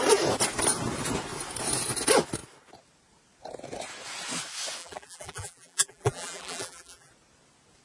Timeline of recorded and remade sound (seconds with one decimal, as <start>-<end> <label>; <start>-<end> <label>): 0.0-4.8 recorded; 4.8-7.1 remade; 7.1-7.8 recorded